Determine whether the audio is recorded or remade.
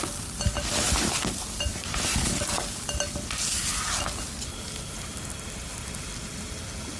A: recorded